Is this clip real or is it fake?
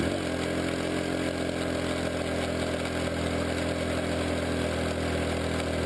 real